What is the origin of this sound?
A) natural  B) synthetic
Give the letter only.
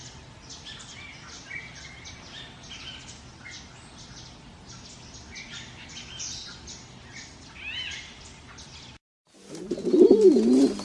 A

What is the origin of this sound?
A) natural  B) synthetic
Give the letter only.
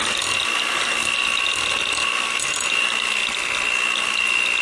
A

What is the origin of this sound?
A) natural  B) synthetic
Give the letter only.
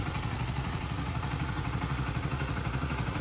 B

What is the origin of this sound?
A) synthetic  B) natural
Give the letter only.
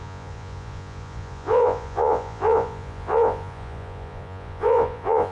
A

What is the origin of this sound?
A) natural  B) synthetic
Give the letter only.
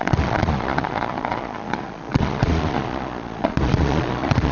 B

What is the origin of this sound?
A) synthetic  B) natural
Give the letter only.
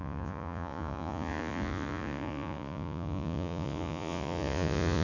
A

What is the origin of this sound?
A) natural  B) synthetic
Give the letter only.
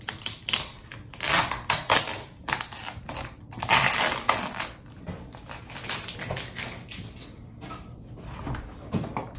A